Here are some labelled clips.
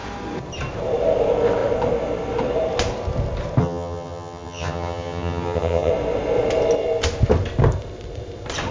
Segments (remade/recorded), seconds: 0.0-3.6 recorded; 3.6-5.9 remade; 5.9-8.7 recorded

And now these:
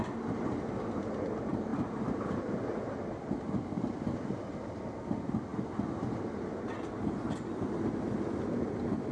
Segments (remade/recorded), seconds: 0.0-9.1 recorded

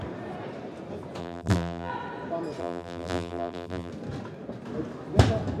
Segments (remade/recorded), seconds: 0.0-1.2 recorded; 1.2-1.9 remade; 1.9-2.6 recorded; 2.6-3.9 remade; 3.9-5.6 recorded

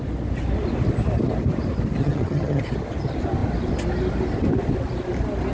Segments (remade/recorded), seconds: 0.0-2.0 recorded; 2.0-2.6 remade; 2.6-5.5 recorded

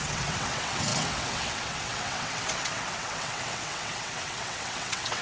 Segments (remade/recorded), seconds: 0.0-5.2 remade

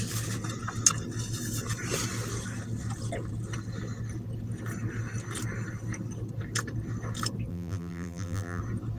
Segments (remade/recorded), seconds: 0.0-7.5 recorded; 7.5-8.6 remade; 8.6-9.0 recorded